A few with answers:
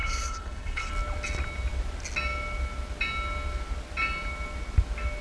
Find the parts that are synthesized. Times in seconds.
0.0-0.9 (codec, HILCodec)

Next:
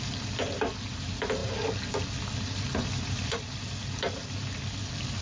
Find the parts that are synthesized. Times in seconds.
none

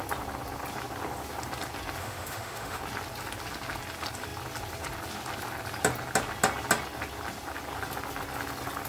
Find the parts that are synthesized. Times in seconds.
2.0-2.8 (autoencoder, DAC-VAE)

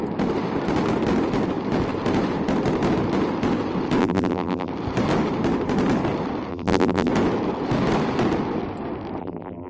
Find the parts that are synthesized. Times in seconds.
4.0-4.7 (vocoder, BigVGAN v2); 6.5-7.1; 9.2-9.7

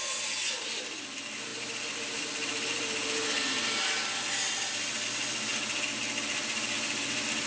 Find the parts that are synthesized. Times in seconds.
none

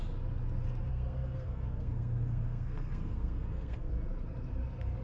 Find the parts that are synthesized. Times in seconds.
0.9-3.9 (codec, SNAC)

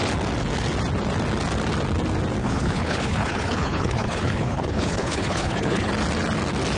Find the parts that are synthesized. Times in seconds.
2.4-5.9 (codec, HILCodec)

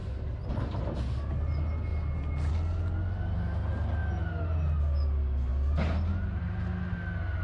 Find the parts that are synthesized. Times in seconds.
0.0-1.0 (vocoder, BigVGAN v2)